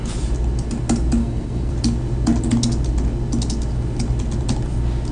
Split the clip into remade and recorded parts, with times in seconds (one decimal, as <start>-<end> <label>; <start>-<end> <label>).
0.0-1.2 recorded; 1.2-1.7 remade; 1.7-5.1 recorded